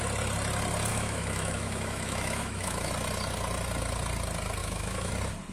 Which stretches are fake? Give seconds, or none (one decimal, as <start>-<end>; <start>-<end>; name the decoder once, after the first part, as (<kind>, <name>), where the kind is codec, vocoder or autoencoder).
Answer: 0.9-2.9 (autoencoder, DAC-VAE); 4.6-5.1